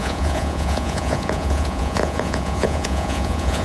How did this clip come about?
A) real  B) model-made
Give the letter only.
B